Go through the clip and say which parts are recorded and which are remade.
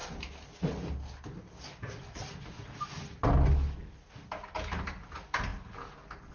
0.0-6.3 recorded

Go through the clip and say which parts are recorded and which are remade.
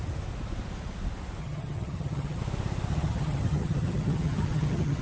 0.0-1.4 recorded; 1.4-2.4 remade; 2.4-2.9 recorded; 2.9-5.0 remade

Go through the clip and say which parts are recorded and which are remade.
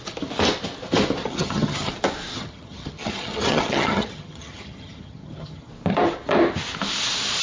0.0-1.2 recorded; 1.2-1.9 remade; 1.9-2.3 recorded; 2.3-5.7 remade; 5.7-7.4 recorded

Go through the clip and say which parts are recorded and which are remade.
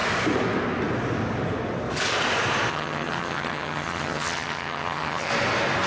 0.0-2.7 recorded; 2.7-5.3 remade; 5.3-5.9 recorded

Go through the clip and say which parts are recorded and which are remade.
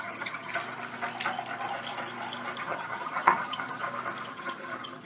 0.0-0.5 remade; 0.5-2.6 recorded; 2.6-3.8 remade; 3.8-4.3 recorded; 4.3-5.0 remade